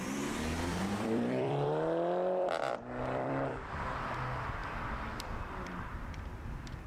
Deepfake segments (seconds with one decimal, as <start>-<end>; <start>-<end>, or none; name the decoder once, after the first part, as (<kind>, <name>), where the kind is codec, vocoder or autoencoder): 0.0-4.6 (vocoder, BigVGAN v2); 5.1-6.9